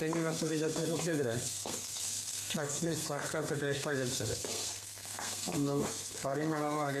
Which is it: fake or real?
fake